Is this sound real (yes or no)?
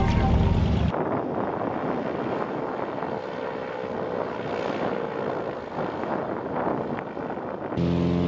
yes